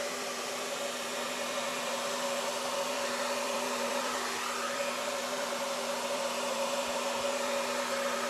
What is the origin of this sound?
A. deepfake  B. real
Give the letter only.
A